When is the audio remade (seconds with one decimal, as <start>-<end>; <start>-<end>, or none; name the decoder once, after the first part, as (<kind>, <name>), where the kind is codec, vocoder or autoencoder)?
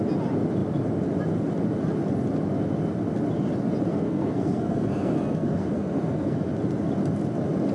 3.9-6.5 (codec, SNAC)